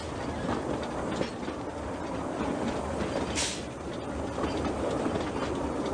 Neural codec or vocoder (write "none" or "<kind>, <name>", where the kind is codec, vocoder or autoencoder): none